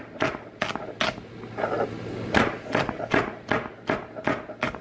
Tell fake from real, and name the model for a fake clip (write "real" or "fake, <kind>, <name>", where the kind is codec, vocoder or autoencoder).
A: real